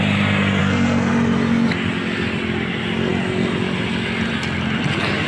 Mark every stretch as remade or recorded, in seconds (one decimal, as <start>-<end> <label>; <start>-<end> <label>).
0.0-0.6 recorded; 0.6-1.1 remade; 1.1-5.3 recorded